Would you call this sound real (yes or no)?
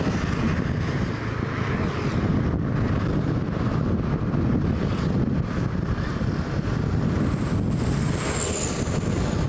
yes